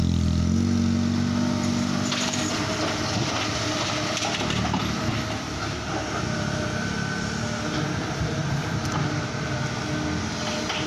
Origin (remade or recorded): recorded